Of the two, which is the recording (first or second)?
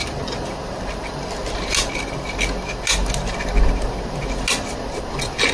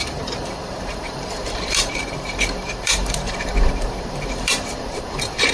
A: first